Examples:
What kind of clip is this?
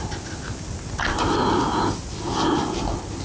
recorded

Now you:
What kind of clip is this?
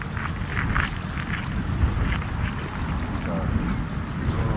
recorded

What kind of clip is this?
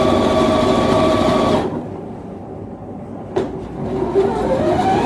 recorded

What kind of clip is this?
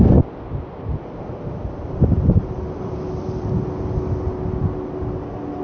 recorded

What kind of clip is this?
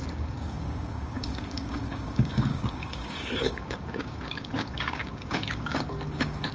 remade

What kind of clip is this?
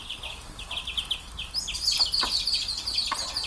recorded